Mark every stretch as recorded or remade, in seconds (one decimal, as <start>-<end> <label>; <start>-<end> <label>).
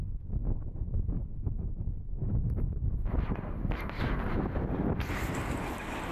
0.0-0.4 recorded; 0.4-1.2 remade; 1.2-6.1 recorded